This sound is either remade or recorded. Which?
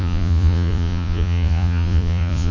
remade